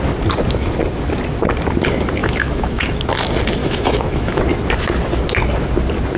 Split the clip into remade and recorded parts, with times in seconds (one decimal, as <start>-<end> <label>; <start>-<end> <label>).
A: 0.0-2.2 recorded; 2.2-3.0 remade; 3.0-3.6 recorded; 3.6-4.4 remade; 4.4-6.2 recorded